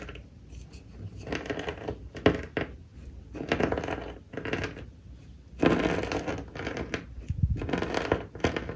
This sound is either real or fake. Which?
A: real